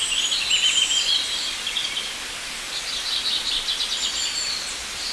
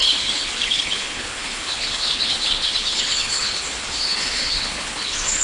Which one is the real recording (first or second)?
first